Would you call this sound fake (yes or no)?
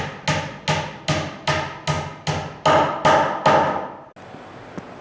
no